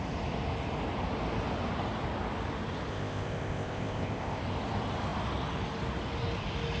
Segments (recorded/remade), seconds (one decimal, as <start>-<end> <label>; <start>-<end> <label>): 0.0-2.9 recorded; 2.9-4.4 remade; 4.4-6.8 recorded